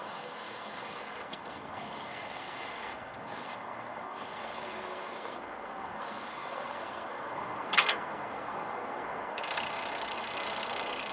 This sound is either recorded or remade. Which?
remade